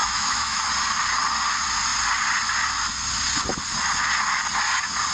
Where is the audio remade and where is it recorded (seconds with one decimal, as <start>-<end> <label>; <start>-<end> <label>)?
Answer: 0.0-0.7 remade; 0.7-5.1 recorded